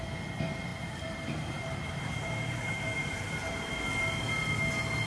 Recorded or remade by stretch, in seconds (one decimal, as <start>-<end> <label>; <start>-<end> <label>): 0.0-0.7 recorded; 0.7-3.8 remade; 3.8-5.1 recorded